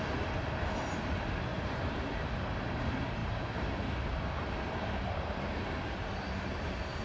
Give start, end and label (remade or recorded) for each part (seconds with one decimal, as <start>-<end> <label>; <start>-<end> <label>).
0.0-1.5 recorded; 1.5-2.2 remade; 2.2-3.2 recorded; 3.2-3.7 remade; 3.7-7.0 recorded

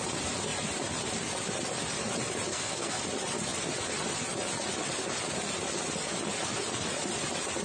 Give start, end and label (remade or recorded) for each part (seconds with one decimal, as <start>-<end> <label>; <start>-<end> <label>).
0.0-2.5 recorded; 2.5-3.0 remade; 3.0-7.6 recorded